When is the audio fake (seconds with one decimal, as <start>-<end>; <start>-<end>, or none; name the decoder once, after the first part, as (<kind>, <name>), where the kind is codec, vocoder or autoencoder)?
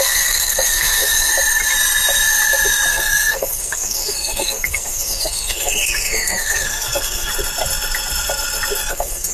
0.0-1.3 (codec, SNAC); 2.9-7.3; 8.9-9.3